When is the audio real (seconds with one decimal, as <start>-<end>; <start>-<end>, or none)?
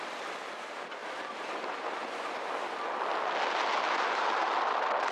0.0-5.1